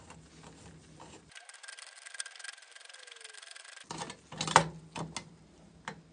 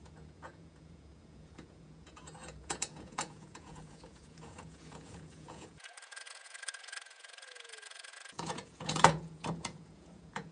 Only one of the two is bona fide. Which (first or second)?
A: first